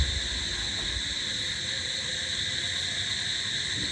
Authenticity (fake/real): real